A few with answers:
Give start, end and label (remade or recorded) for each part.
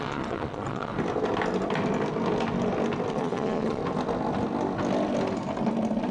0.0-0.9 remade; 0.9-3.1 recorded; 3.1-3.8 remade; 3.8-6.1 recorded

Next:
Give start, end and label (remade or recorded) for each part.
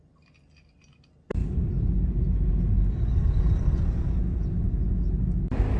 0.0-5.8 recorded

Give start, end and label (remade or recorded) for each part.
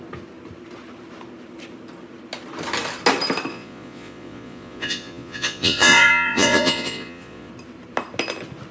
0.0-3.5 recorded; 3.5-7.5 remade; 7.5-8.7 recorded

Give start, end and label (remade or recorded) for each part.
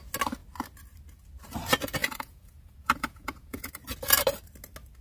0.0-2.0 recorded; 2.0-3.7 remade; 3.7-5.0 recorded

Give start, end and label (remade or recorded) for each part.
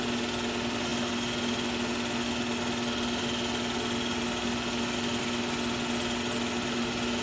0.0-7.2 recorded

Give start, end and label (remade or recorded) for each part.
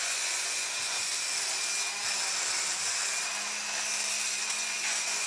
0.0-1.1 remade; 1.1-4.3 recorded; 4.3-5.3 remade